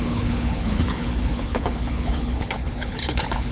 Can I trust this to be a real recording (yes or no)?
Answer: no